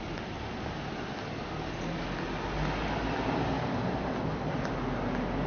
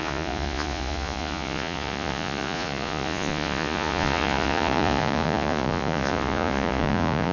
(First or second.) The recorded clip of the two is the first